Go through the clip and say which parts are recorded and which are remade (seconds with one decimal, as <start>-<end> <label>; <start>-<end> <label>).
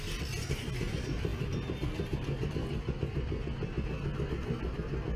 0.0-1.3 recorded; 1.3-2.5 remade; 2.5-3.4 recorded; 3.4-4.0 remade; 4.0-5.2 recorded